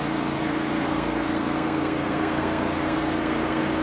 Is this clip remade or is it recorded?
remade